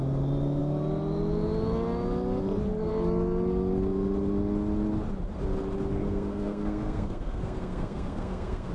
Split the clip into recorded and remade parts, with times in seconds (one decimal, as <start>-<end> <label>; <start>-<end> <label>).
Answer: 0.0-6.0 recorded; 6.0-8.7 remade